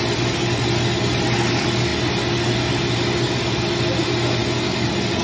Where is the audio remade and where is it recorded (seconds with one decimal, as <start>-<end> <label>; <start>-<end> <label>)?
0.0-5.2 recorded